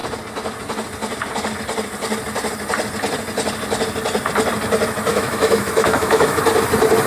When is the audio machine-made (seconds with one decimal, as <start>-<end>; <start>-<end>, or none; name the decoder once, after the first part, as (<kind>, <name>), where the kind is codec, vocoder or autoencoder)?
5.1-6.4 (autoencoder, DAC-VAE)